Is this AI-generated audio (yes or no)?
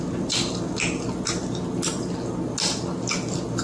no